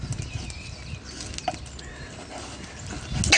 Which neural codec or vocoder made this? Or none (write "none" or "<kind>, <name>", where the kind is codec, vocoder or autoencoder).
none